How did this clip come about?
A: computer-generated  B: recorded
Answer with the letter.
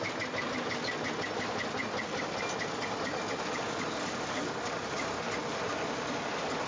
B